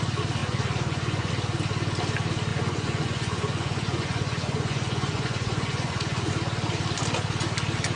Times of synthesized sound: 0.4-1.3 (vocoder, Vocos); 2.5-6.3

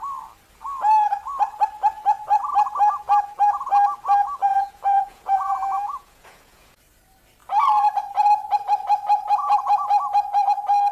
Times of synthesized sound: 4.5-6.8 (vocoder, Vocos)

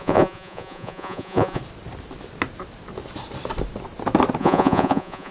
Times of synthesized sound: 0.0-1.6 (vocoder, Vocos); 4.4-5.3